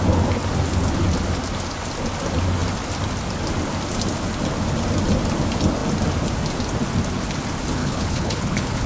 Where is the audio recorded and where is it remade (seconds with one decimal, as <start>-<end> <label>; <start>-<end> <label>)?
0.0-7.8 recorded; 7.8-8.9 remade

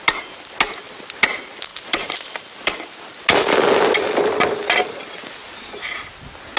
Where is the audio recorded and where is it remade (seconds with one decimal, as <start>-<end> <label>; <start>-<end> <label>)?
0.0-1.7 recorded; 1.7-2.7 remade; 2.7-6.6 recorded

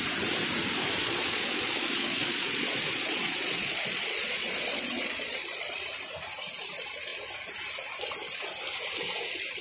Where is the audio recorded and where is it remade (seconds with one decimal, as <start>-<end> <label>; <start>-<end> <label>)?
0.0-1.0 recorded; 1.0-5.7 remade; 5.7-9.6 recorded